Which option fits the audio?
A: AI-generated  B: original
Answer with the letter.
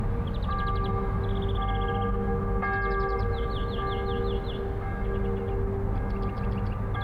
B